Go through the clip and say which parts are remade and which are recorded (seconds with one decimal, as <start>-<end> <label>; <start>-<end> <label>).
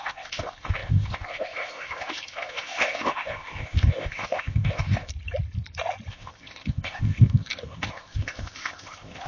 0.0-5.1 remade; 5.1-6.1 recorded; 6.1-9.3 remade